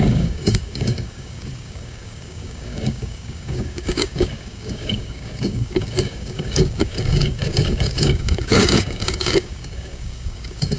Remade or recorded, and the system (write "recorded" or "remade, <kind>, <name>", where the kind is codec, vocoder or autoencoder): remade, codec, DAC